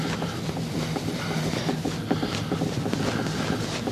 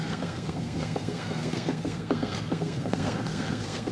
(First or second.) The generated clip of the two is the second